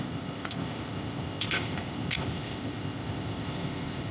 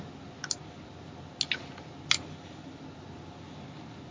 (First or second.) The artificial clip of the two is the first